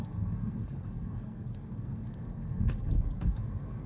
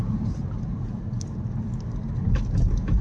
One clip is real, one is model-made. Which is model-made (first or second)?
first